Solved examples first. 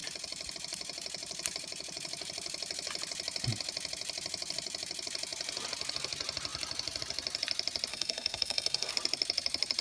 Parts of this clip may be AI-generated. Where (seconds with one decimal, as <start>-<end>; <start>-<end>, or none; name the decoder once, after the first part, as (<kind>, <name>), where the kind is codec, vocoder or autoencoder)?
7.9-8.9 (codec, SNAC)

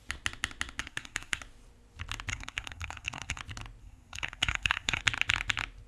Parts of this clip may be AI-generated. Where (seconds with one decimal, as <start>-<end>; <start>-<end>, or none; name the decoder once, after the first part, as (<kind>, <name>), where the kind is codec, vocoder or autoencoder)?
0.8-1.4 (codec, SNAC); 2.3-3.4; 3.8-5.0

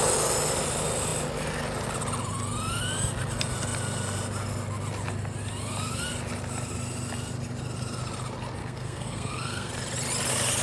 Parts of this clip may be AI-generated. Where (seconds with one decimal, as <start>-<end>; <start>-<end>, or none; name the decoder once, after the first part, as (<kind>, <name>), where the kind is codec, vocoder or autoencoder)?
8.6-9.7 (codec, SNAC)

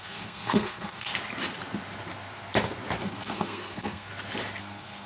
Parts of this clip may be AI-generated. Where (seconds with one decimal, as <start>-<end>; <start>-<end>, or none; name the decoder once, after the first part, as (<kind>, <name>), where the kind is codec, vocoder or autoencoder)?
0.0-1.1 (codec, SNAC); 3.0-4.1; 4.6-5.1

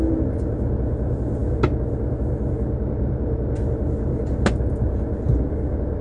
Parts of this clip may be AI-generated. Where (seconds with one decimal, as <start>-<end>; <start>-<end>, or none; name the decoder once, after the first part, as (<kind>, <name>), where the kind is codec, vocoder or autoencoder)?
none

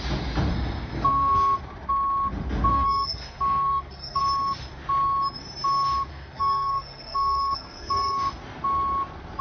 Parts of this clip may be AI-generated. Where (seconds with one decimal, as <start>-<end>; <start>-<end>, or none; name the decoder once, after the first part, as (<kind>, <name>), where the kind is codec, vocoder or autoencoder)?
0.5-1.6 (codec, SNAC); 2.7-4.2; 6.1-8.4

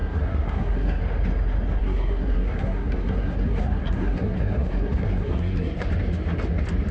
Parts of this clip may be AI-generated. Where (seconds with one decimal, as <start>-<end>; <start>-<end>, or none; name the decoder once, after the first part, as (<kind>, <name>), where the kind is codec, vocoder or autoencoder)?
0.0-1.0 (codec, SNAC); 1.8-5.9